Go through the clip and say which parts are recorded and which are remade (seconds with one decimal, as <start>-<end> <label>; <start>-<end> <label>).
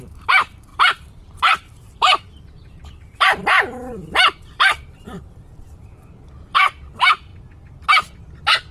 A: 0.0-7.3 remade; 7.3-8.7 recorded